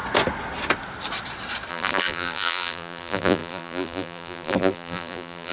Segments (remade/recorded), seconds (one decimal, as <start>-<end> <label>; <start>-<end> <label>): 0.0-1.7 recorded; 1.7-5.5 remade